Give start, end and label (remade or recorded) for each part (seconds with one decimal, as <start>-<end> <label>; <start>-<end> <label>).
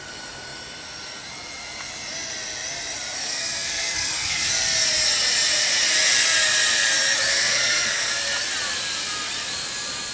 0.0-3.2 recorded; 3.2-4.5 remade; 4.5-7.3 recorded; 7.3-8.1 remade; 8.1-10.1 recorded